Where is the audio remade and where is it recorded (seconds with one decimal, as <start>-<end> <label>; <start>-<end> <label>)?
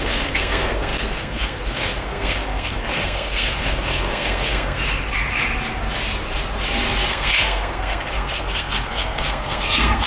0.0-4.8 remade; 4.8-7.1 recorded; 7.1-10.1 remade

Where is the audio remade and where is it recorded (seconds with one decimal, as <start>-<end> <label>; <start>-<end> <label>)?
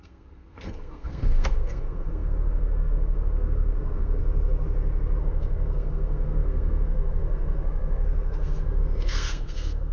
0.0-4.2 remade; 4.2-5.2 recorded; 5.2-9.9 remade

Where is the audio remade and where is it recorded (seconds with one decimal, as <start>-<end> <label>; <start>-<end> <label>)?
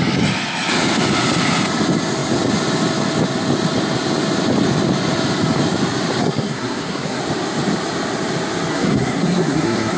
0.0-6.2 recorded; 6.2-7.2 remade; 7.2-8.7 recorded; 8.7-10.0 remade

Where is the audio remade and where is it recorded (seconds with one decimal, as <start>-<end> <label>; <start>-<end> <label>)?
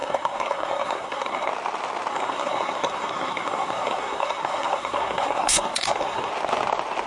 0.0-1.5 remade; 1.5-2.1 recorded; 2.1-6.3 remade; 6.3-7.1 recorded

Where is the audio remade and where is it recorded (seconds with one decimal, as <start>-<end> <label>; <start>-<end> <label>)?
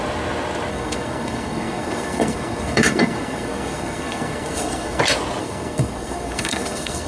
0.0-0.7 recorded; 0.7-5.0 remade; 5.0-5.4 recorded; 5.4-7.1 remade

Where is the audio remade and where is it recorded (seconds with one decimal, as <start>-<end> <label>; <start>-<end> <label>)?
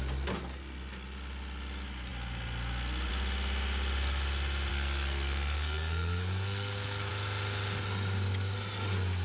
0.0-4.7 recorded; 4.7-7.1 remade; 7.1-9.2 recorded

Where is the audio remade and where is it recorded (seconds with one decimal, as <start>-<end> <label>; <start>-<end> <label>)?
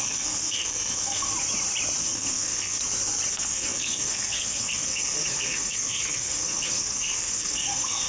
0.0-1.3 remade; 1.3-2.0 recorded; 2.0-2.8 remade; 2.8-3.3 recorded; 3.3-8.1 remade